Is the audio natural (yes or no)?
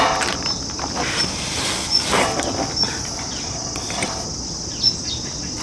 yes